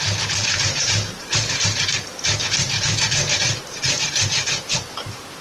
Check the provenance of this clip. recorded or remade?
remade